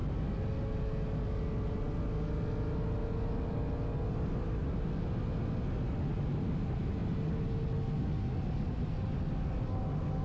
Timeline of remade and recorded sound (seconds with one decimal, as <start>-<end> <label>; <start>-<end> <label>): 0.0-10.2 recorded